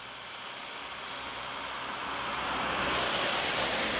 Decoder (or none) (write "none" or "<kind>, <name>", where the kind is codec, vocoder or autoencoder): vocoder, BigVGAN v2